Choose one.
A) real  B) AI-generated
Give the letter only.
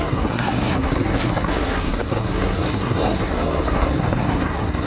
B